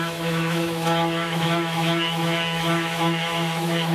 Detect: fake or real fake